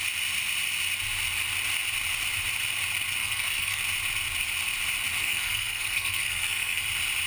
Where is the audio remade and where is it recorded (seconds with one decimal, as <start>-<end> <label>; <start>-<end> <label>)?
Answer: 0.0-3.2 recorded; 3.2-3.8 remade; 3.8-5.2 recorded; 5.2-6.8 remade; 6.8-7.3 recorded